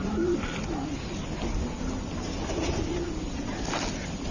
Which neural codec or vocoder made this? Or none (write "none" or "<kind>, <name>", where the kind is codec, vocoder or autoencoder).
none